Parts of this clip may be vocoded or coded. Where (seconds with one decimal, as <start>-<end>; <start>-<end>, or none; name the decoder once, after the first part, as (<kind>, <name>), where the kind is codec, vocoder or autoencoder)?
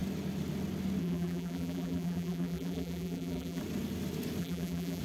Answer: 1.0-3.6 (vocoder, BigVGAN v2); 4.4-5.0